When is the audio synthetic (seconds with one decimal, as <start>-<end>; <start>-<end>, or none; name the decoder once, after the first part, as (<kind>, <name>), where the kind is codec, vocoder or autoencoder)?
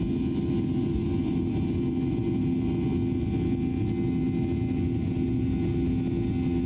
none